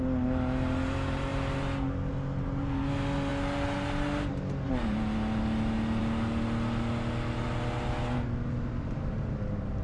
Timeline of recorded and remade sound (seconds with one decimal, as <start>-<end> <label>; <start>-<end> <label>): 0.0-9.8 recorded